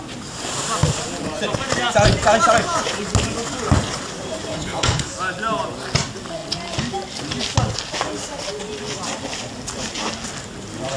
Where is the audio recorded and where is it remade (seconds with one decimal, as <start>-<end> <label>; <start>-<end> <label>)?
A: 0.0-4.5 recorded; 4.5-5.0 remade; 5.0-11.0 recorded